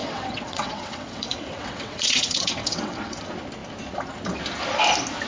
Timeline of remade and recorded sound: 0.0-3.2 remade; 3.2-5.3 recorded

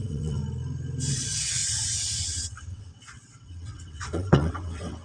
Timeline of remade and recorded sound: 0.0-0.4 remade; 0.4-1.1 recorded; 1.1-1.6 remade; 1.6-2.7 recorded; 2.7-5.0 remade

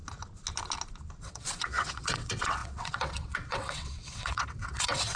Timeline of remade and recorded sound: 0.0-1.2 recorded; 1.2-5.2 remade